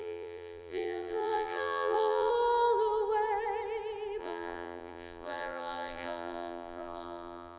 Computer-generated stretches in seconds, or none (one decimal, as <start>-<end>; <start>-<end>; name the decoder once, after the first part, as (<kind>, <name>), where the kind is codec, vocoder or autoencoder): 0.0-2.3 (vocoder, BigVGAN v2); 4.2-7.6